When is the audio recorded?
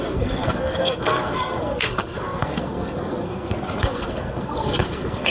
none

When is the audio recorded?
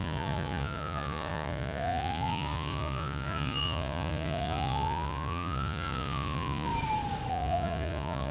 6.7-7.3